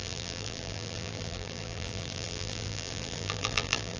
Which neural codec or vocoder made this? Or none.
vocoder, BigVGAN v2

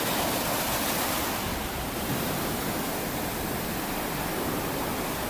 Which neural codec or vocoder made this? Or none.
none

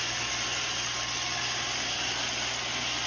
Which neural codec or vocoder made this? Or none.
none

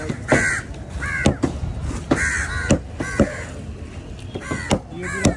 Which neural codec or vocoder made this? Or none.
none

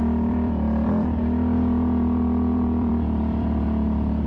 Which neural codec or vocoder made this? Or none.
vocoder, BigVGAN v2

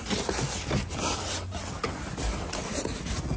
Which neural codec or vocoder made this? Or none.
none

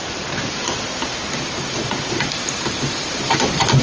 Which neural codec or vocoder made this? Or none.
vocoder, BigVGAN v2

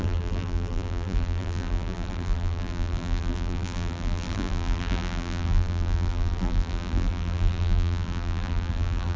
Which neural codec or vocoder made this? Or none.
vocoder, BigVGAN v2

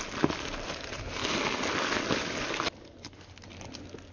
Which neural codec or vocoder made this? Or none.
none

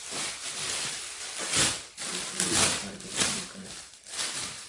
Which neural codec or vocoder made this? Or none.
vocoder, BigVGAN v2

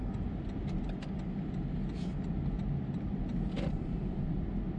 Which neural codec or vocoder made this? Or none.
none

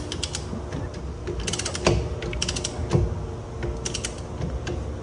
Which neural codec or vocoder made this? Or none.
none